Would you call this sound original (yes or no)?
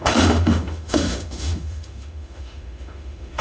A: no